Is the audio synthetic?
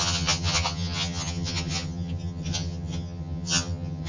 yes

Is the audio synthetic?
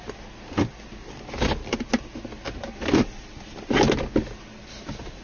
no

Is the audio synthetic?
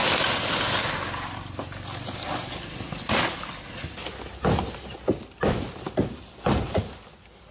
no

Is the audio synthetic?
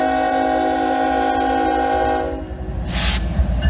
no